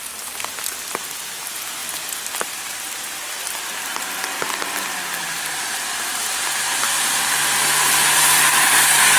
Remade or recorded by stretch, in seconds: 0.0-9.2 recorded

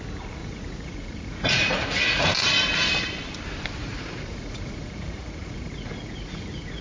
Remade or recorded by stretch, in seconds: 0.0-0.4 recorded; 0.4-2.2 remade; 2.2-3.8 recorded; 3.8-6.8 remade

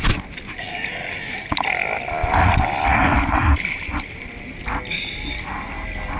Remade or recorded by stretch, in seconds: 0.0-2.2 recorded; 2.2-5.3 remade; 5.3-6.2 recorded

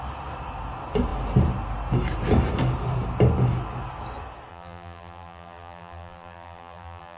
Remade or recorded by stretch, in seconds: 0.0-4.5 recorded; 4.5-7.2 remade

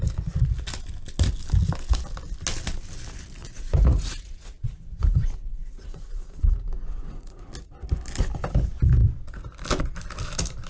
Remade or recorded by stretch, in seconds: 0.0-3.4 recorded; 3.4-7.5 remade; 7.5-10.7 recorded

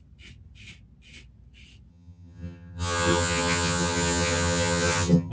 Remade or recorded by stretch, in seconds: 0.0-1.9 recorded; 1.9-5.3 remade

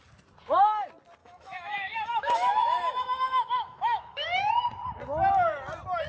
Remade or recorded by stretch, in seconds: 0.0-1.2 recorded; 1.2-4.5 remade; 4.5-6.1 recorded

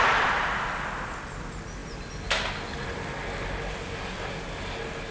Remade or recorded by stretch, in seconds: 0.0-5.1 recorded